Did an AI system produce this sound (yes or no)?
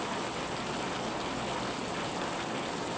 no